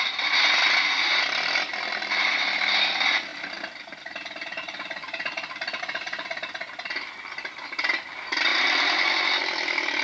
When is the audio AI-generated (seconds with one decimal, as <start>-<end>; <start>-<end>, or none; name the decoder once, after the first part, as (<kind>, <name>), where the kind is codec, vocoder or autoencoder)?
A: none